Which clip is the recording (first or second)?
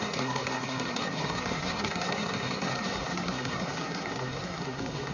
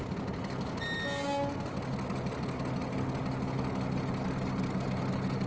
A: second